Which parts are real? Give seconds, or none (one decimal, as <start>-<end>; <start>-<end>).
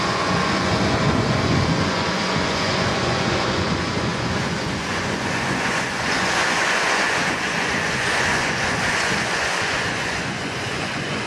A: none